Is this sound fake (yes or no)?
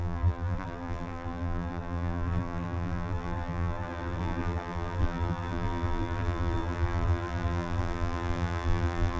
yes